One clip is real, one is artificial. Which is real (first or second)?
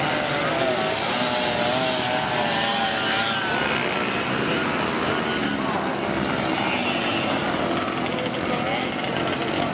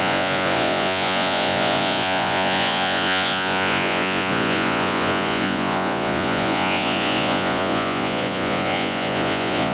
first